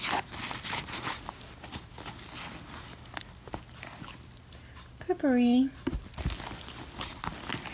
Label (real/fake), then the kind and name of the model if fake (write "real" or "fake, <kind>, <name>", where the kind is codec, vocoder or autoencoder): real